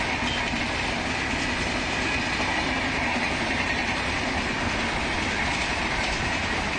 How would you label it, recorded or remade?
recorded